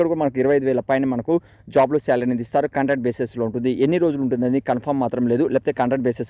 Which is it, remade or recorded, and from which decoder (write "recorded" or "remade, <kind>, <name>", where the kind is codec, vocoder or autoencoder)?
recorded